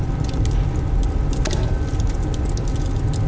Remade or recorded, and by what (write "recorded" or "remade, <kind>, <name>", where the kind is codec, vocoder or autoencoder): recorded